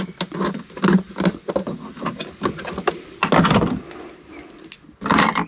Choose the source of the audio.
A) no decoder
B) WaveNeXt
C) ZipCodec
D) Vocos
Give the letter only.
A